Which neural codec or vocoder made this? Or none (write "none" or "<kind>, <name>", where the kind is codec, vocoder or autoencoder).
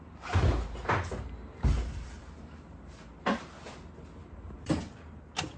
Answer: none